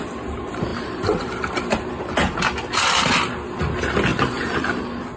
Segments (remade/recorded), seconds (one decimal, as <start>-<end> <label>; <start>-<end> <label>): 0.0-0.7 recorded; 0.7-1.9 remade; 1.9-4.1 recorded; 4.1-4.8 remade; 4.8-5.2 recorded